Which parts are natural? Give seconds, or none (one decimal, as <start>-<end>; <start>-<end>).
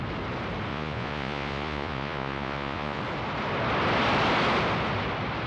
0.0-0.7; 3.0-5.5